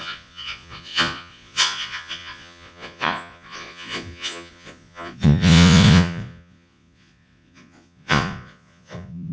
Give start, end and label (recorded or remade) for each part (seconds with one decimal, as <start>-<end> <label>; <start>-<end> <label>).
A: 0.0-9.3 remade

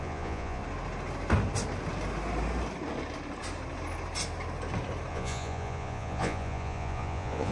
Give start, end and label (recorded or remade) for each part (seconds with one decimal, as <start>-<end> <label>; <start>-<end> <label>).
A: 0.0-0.6 remade; 0.6-5.1 recorded; 5.1-7.5 remade